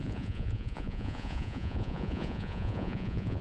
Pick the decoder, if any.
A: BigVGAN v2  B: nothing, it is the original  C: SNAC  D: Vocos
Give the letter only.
D